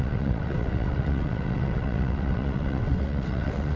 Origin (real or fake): fake